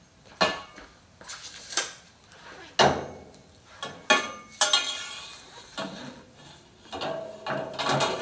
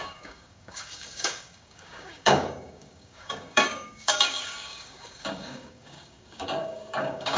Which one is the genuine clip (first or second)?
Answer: first